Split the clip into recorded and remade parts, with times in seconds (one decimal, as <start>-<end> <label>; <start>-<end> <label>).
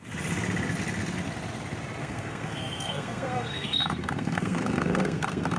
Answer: 0.0-2.0 recorded; 2.0-5.6 remade